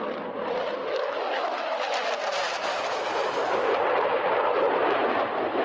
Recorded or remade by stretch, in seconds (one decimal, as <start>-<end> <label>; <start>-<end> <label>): 0.0-0.8 recorded; 0.8-2.1 remade; 2.1-2.7 recorded; 2.7-3.7 remade; 3.7-5.6 recorded